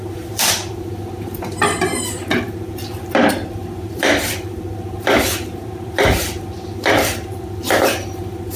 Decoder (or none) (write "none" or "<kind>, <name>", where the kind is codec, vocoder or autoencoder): vocoder, BigVGAN v2